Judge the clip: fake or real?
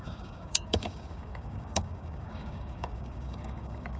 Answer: fake